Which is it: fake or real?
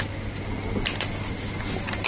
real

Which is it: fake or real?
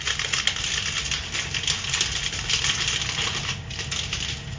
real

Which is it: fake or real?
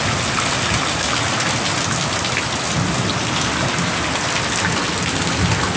real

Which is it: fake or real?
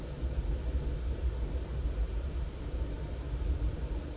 real